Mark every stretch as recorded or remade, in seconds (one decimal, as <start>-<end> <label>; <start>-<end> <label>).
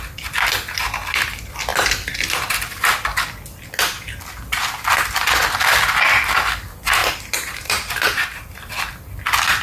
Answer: 0.0-7.0 recorded; 7.0-8.7 remade; 8.7-9.6 recorded